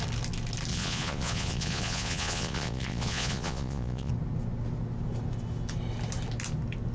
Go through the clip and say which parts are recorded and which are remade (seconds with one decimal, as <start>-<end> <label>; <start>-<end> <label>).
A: 0.0-0.7 recorded; 0.7-4.1 remade; 4.1-6.9 recorded